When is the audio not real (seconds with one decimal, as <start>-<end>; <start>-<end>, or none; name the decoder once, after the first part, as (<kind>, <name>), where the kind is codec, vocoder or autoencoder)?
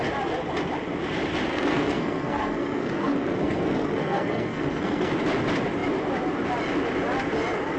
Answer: 1.5-5.1 (codec, SNAC)